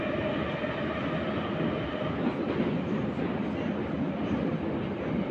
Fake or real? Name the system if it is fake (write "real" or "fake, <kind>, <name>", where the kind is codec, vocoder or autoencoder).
real